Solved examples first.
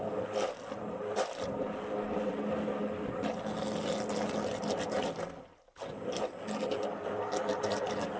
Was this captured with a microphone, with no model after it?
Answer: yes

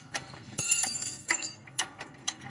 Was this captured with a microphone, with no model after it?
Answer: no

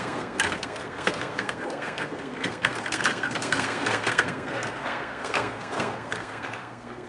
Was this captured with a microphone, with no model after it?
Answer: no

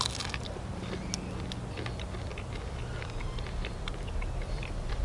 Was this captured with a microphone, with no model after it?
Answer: yes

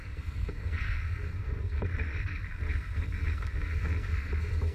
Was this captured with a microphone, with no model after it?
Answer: no